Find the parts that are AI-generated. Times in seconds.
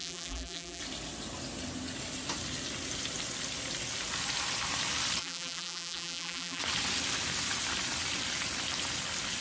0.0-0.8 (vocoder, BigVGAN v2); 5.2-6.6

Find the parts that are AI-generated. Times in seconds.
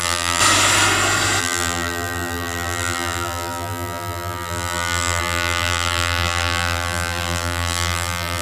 0.0-0.4 (vocoder, BigVGAN v2); 1.4-8.4